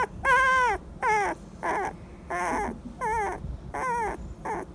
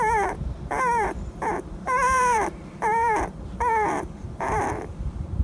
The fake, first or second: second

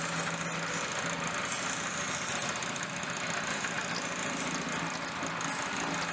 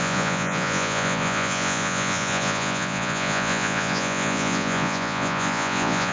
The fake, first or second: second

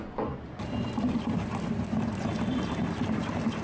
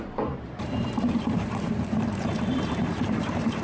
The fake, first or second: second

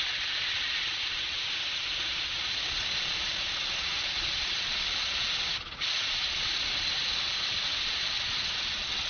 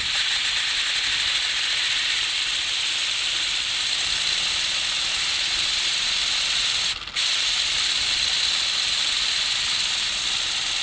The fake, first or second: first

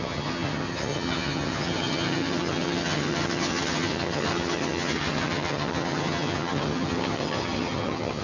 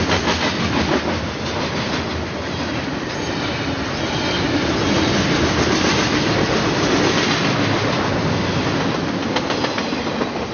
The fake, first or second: first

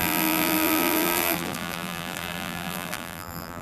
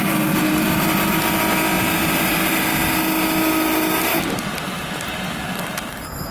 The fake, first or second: first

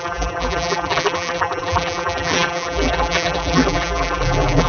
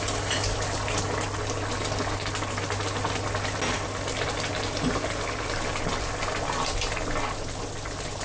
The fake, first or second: first